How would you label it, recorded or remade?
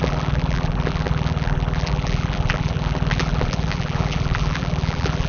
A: remade